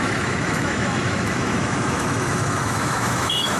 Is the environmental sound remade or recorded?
remade